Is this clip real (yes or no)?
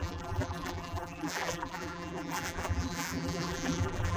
no